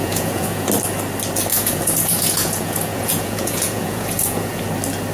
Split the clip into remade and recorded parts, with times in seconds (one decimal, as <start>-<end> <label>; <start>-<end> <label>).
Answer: 0.0-0.7 remade; 0.7-1.5 recorded; 1.5-4.6 remade; 4.6-5.1 recorded